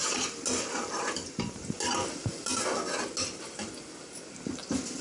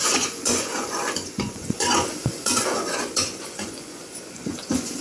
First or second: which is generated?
second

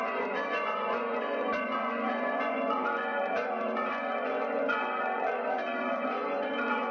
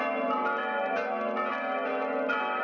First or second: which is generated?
first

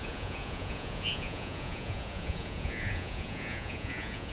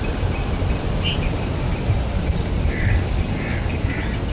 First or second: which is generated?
first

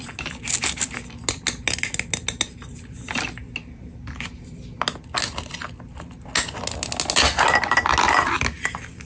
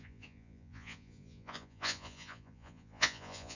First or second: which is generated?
second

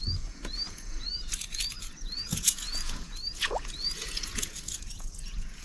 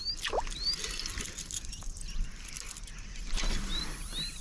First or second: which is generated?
first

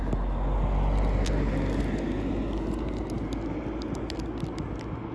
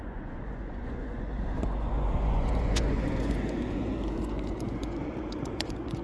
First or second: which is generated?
second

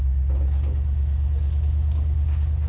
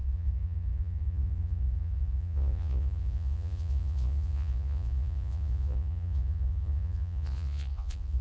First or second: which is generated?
second